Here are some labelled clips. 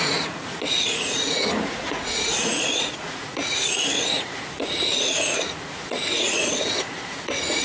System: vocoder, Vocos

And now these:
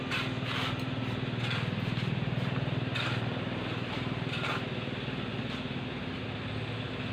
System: none